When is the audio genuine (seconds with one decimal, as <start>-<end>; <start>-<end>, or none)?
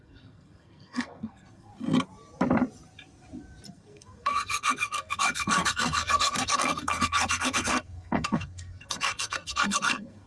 1.7-3.7